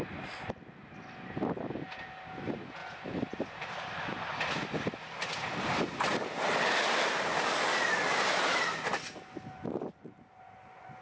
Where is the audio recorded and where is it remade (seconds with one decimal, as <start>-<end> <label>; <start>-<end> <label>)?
0.0-2.8 recorded; 2.8-4.4 remade; 4.4-11.0 recorded